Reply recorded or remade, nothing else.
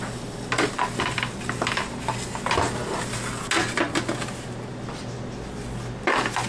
recorded